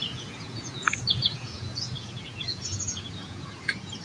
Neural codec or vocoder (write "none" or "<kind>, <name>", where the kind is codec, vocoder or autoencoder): vocoder, Vocos